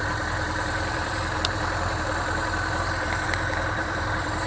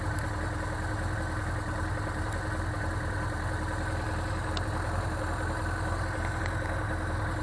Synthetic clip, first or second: first